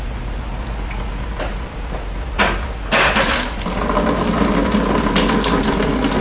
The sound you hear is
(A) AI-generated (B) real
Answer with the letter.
B